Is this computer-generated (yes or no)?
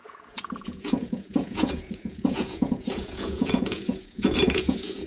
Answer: yes